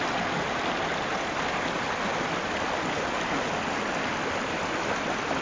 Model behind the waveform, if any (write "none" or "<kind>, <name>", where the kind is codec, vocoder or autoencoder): none